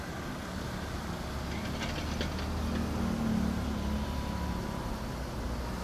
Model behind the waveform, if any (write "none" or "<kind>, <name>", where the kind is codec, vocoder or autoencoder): none